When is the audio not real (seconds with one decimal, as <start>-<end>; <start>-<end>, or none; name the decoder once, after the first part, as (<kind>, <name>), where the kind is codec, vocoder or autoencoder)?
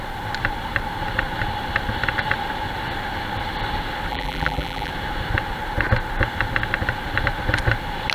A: 4.1-4.9 (vocoder, BigVGAN v2)